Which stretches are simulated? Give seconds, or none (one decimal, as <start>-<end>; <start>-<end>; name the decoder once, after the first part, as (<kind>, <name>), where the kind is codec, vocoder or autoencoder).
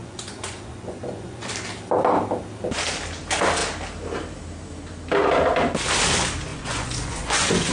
0.0-1.5 (vocoder, Vocos); 6.5-7.7